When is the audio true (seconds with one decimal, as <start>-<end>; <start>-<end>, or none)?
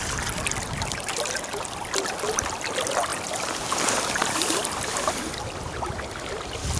0.0-6.8